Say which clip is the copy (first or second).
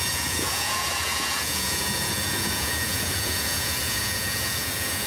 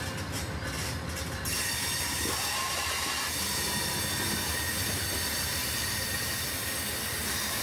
first